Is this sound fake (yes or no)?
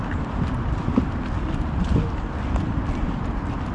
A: no